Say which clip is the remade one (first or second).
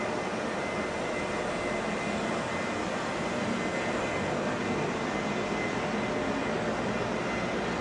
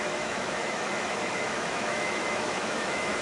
second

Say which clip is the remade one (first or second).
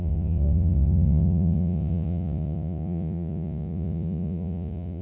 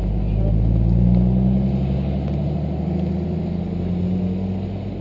first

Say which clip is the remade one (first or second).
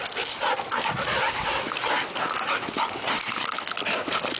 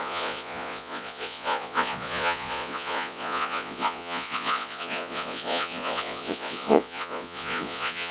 second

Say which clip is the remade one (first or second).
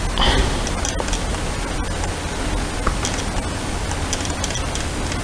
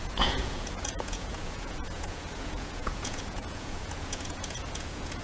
second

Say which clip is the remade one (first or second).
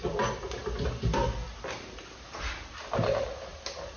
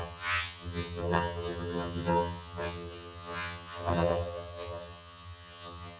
second